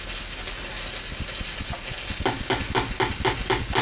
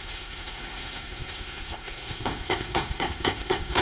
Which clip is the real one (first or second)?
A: first